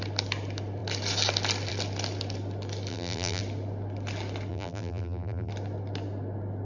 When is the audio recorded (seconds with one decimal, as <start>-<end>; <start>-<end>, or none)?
0.0-2.9; 3.4-4.5; 5.5-6.7